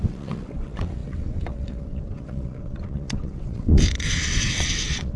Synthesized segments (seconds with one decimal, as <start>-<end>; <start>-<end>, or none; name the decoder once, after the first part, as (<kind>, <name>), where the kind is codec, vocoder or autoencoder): 0.0-5.2 (vocoder, WaveNeXt)